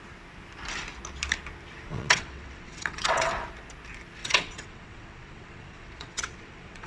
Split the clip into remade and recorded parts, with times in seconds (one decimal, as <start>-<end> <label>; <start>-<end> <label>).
0.0-1.9 recorded; 1.9-3.3 remade; 3.3-4.2 recorded; 4.2-6.9 remade